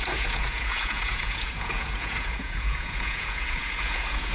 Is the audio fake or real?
fake